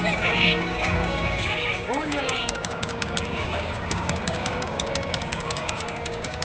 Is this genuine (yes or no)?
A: no